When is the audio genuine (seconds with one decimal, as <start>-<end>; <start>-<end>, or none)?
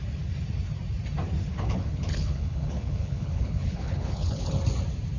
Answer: 0.0-1.5; 4.6-5.2